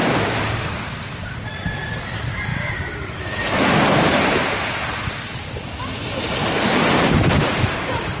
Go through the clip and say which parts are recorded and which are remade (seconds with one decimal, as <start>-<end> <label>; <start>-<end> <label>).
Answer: 0.0-1.4 remade; 1.4-8.2 recorded